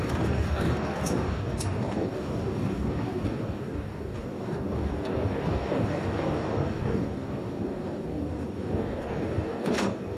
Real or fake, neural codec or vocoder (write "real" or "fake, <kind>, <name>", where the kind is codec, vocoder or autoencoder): fake, codec, DAC